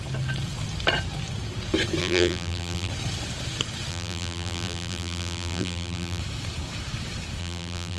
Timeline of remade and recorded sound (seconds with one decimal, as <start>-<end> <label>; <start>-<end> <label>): 0.0-2.0 recorded; 2.0-2.9 remade; 2.9-3.9 recorded; 3.9-6.2 remade; 6.2-7.4 recorded; 7.4-8.0 remade